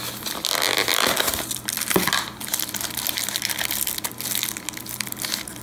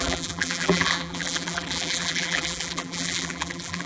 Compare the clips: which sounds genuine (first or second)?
first